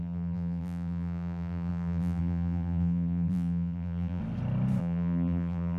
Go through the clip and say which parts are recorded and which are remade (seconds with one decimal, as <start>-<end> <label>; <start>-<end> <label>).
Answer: 0.0-4.2 remade; 4.2-4.8 recorded; 4.8-5.8 remade